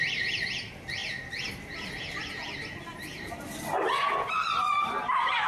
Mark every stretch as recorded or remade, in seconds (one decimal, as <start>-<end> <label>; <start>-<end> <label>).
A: 0.0-1.0 remade; 1.0-1.5 recorded; 1.5-5.5 remade